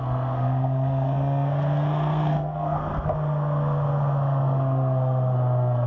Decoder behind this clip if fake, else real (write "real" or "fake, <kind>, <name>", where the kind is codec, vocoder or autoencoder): fake, codec, SNAC